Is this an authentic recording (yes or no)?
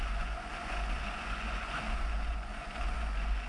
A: no